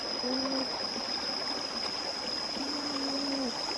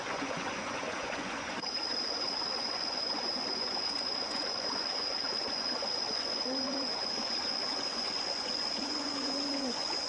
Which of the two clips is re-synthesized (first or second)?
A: second